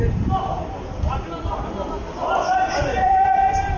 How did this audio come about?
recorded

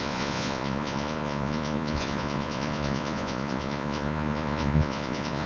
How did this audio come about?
remade